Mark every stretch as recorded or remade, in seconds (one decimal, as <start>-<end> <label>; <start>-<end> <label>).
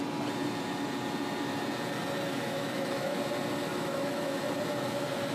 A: 0.0-2.3 recorded; 2.3-3.2 remade; 3.2-3.7 recorded; 3.7-4.4 remade; 4.4-5.3 recorded